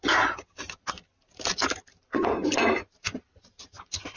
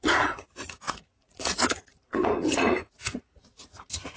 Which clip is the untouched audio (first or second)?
first